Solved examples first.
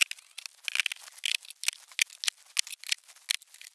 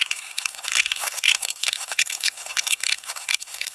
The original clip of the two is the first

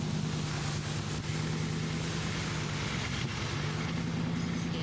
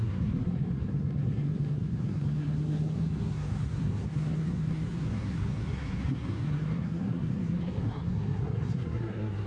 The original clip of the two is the first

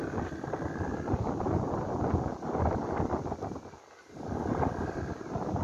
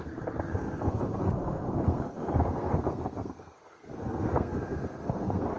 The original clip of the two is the first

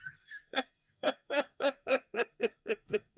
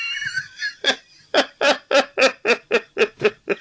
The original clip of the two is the second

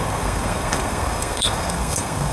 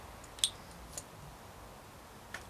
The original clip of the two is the second